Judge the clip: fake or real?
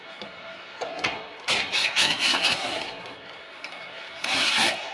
fake